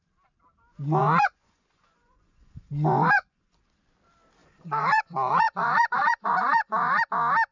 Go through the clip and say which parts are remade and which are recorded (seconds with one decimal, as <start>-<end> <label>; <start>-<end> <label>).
0.0-1.0 recorded; 1.0-3.6 remade; 3.6-4.4 recorded; 4.4-7.0 remade; 7.0-7.5 recorded